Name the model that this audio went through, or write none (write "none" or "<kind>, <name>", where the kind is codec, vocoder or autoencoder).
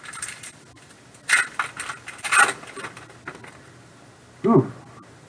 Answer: none